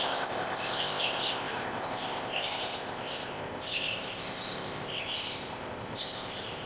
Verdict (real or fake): fake